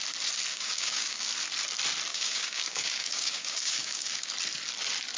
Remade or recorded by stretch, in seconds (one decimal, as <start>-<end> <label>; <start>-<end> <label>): 0.0-0.5 recorded; 0.5-1.3 remade; 1.3-2.1 recorded; 2.1-4.3 remade; 4.3-5.2 recorded